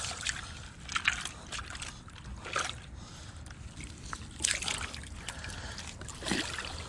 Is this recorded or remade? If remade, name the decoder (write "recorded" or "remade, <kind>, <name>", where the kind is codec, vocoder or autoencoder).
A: recorded